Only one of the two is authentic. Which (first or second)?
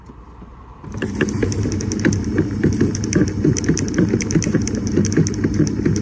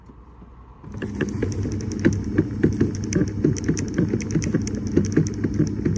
second